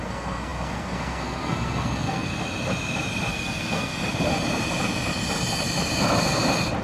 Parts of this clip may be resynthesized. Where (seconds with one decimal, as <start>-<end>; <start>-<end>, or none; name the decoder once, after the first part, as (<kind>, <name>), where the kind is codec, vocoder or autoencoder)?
0.0-2.3 (codec, SNAC); 3.3-3.9